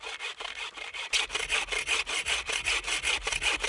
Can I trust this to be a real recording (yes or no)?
no